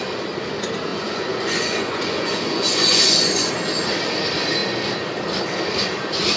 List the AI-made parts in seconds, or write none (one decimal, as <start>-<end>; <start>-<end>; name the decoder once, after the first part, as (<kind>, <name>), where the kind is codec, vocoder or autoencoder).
0.9-3.5 (vocoder, Vocos)